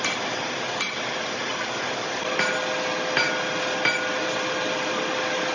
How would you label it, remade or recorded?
recorded